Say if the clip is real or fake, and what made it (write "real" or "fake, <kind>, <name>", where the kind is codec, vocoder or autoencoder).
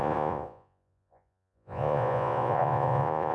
fake, vocoder, Vocos